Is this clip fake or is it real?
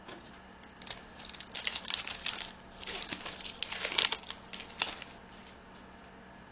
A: real